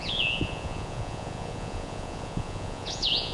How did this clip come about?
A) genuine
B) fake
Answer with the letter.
B